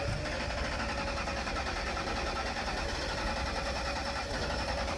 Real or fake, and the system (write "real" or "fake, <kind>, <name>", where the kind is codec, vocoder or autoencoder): real